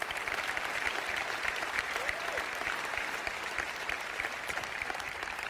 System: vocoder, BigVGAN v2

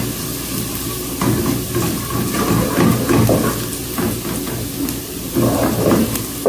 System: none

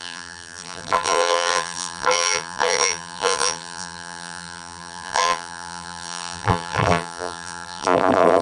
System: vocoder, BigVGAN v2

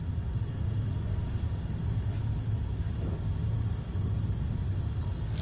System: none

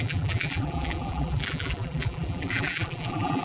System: vocoder, BigVGAN v2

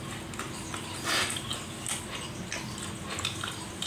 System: none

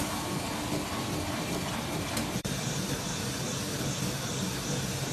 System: none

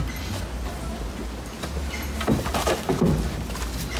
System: none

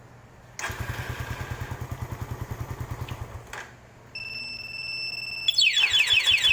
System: none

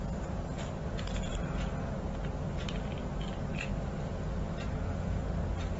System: none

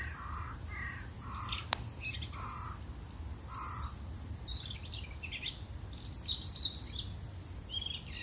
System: none